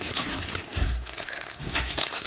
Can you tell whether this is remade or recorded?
remade